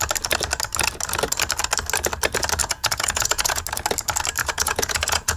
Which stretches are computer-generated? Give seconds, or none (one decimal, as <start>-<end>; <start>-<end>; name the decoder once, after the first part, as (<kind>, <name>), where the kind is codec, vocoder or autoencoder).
2.6-3.6 (vocoder, Vocos); 4.4-5.4